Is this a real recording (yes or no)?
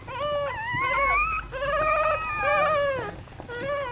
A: yes